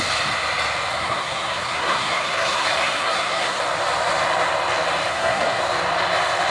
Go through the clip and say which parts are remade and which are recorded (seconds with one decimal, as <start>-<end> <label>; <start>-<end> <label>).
0.0-0.9 recorded; 0.9-3.6 remade; 3.6-5.1 recorded; 5.1-5.6 remade; 5.6-6.5 recorded